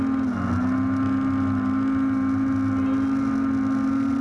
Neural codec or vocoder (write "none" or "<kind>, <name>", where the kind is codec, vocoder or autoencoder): none